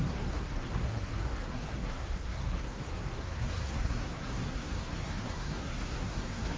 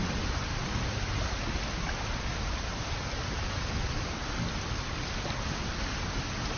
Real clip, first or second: second